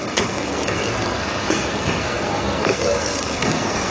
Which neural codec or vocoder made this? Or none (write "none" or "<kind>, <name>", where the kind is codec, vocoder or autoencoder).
codec, SNAC